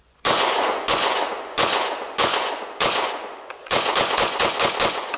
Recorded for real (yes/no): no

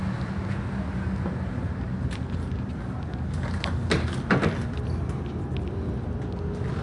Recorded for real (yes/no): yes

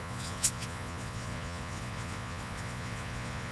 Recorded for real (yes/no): no